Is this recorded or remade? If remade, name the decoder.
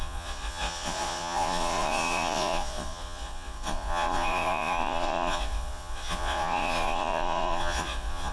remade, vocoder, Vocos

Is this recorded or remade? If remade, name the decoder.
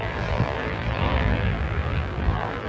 remade, vocoder, BigVGAN v2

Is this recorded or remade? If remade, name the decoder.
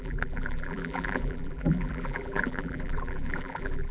remade, vocoder, BigVGAN v2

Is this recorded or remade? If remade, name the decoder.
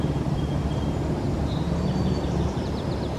remade, vocoder, BigVGAN v2